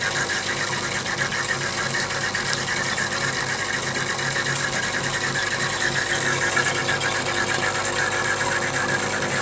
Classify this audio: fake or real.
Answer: real